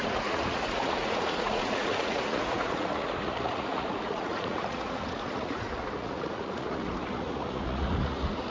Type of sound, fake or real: fake